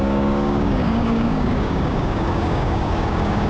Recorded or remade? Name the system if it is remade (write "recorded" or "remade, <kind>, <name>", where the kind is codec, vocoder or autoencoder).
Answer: remade, codec, DAC